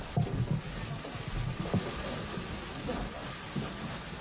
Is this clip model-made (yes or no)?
no